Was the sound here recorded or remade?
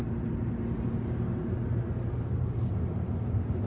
recorded